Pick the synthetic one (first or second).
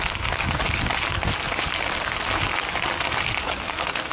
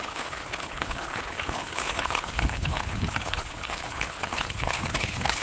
second